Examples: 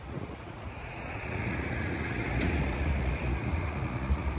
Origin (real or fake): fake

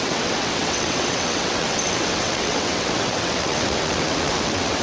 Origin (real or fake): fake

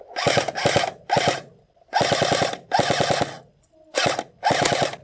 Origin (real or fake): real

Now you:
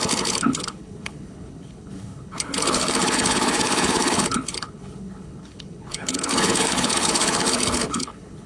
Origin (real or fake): fake